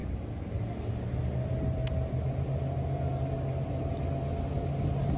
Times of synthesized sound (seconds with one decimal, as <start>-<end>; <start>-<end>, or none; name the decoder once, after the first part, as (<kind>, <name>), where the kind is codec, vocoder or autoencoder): none